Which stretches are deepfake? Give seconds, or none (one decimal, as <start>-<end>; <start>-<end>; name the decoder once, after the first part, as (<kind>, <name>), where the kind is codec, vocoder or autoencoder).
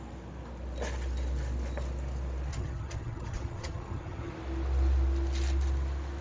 2.5-4.3 (vocoder, HiFi-GAN)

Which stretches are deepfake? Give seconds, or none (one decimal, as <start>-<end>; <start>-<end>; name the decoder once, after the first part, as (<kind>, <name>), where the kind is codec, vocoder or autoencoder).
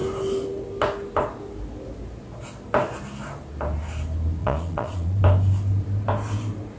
4.4-5.2 (vocoder, Vocos)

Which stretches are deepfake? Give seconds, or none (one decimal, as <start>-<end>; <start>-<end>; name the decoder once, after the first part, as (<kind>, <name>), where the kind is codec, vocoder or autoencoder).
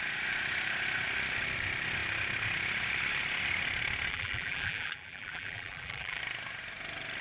4.1-6.2 (vocoder, BigVGAN v2)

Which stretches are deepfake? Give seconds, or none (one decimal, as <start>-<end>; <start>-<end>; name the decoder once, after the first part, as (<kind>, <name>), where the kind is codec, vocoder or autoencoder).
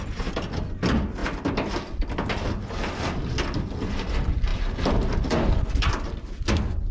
none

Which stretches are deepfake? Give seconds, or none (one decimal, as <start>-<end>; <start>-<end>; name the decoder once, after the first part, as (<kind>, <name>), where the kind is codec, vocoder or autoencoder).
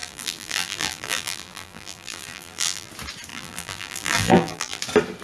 0.0-2.9 (vocoder, BigVGAN v2); 3.3-4.8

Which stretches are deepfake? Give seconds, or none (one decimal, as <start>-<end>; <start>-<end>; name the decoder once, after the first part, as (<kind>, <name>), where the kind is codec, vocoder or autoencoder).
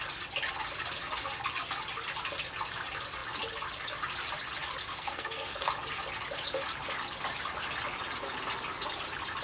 4.9-5.7 (codec, SNAC)